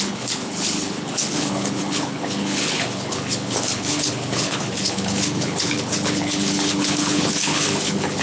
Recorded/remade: remade